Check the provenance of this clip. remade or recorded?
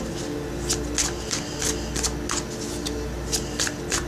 recorded